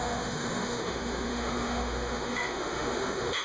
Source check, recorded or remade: remade